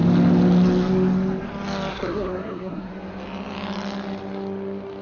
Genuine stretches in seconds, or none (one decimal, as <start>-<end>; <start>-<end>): 0.0-1.9; 2.9-5.0